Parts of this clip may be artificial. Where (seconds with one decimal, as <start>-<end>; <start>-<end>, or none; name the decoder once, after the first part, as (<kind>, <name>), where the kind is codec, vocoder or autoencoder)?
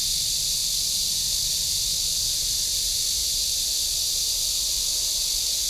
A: none